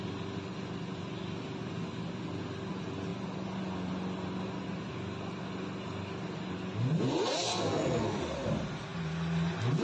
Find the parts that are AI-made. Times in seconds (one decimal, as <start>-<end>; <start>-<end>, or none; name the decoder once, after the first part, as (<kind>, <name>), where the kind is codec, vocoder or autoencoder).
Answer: 7.5-8.2 (codec, SNAC)